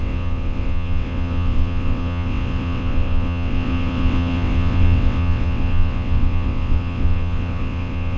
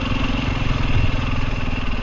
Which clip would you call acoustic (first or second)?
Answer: second